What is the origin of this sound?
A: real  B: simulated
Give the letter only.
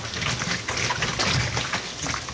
A